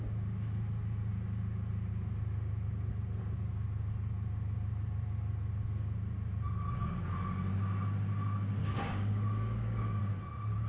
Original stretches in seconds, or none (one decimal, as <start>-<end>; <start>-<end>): 0.0-8.6; 10.0-10.7